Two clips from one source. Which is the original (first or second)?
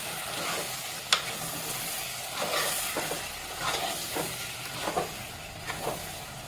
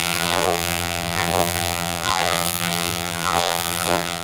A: first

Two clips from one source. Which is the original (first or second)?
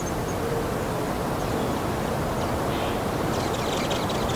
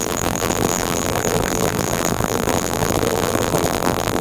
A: first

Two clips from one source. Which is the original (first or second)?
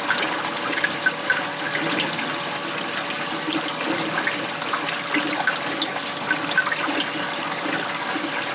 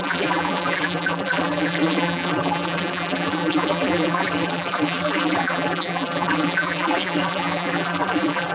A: first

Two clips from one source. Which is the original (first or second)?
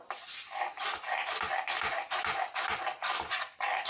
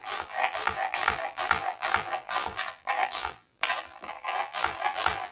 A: first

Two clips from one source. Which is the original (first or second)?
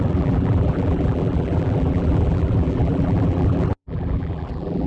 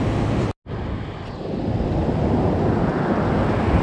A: second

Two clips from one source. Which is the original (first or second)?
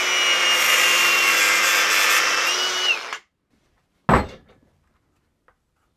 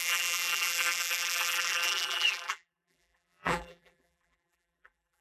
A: first